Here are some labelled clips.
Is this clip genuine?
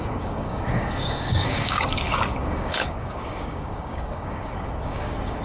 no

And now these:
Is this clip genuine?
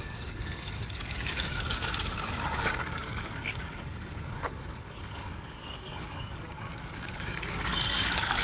no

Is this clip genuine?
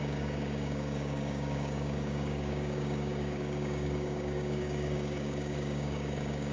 no